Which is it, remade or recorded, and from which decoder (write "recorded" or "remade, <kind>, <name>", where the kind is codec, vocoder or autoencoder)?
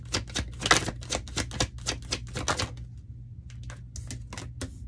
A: recorded